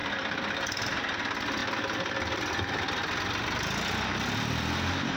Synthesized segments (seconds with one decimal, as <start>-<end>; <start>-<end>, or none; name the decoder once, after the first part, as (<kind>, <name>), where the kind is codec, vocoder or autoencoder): 0.0-1.0 (vocoder, BigVGAN v2); 1.6-2.5